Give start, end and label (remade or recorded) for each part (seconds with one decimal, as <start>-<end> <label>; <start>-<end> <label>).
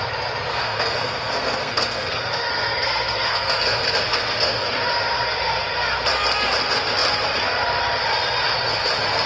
0.0-0.5 recorded; 0.5-4.7 remade; 4.7-9.3 recorded